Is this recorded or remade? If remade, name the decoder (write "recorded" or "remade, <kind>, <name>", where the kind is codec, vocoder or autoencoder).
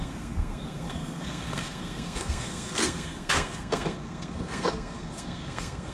remade, codec, SNAC